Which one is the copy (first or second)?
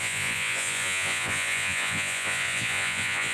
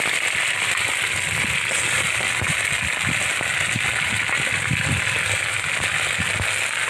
first